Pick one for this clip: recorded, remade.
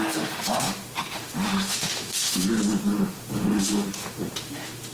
remade